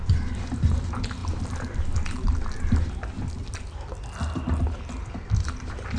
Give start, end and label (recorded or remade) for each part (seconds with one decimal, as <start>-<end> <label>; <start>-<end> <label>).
0.0-6.0 recorded